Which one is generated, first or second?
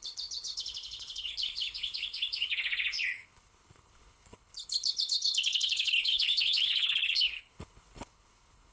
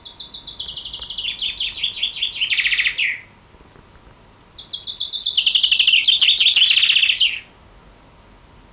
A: first